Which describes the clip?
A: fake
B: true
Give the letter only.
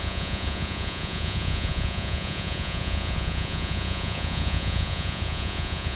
A